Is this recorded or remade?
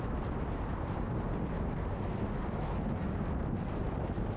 recorded